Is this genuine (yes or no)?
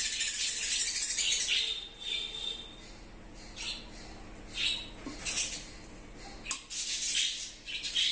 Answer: yes